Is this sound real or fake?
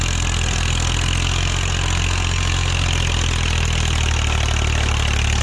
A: real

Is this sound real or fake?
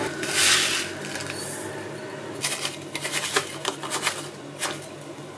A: real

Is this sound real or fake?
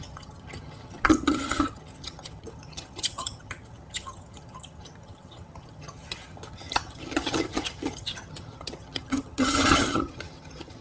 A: fake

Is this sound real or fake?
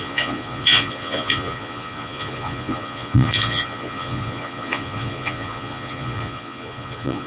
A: fake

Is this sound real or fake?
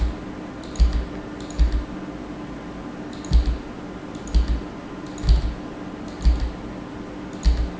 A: real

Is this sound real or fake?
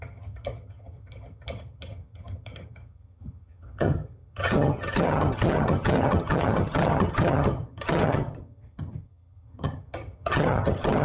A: fake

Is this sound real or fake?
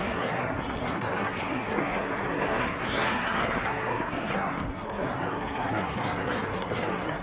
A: fake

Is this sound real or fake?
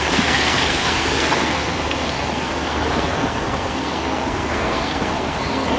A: fake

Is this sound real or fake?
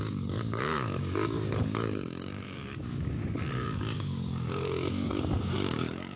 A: fake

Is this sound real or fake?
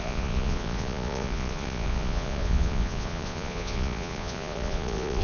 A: fake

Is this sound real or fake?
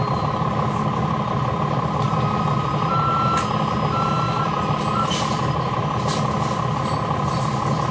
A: real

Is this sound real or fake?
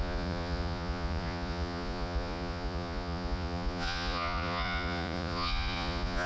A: fake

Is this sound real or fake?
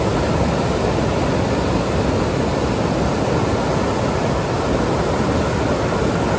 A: real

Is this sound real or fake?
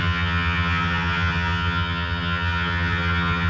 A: fake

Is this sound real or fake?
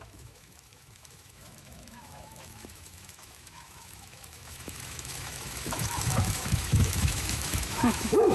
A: fake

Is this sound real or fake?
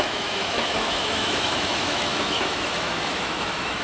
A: fake